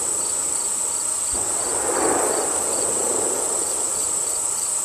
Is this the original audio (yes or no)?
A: yes